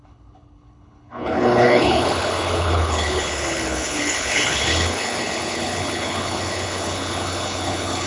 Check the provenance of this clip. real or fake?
fake